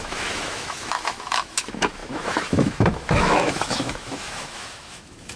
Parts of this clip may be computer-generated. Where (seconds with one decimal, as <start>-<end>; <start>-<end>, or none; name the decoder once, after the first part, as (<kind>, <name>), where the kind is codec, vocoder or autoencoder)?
0.0-5.4 (autoencoder, DAC-VAE)